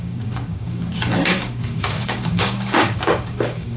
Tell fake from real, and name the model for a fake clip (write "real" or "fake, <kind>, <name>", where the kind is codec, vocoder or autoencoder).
fake, codec, DAC